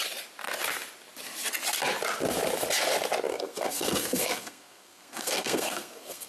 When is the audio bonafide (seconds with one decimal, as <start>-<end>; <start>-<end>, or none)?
0.0-3.3